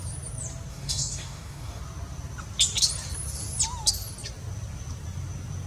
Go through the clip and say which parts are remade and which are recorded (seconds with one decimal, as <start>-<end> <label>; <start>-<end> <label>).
0.0-0.7 recorded; 0.7-1.8 remade; 1.8-5.7 recorded